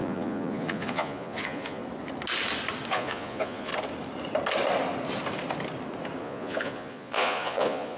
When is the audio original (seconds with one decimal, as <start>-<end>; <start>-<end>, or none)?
1.8-2.9; 3.7-6.2